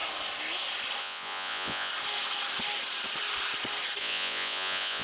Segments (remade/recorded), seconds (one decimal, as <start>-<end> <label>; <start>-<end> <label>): 0.0-1.0 recorded; 1.0-1.9 remade; 1.9-4.0 recorded; 4.0-5.0 remade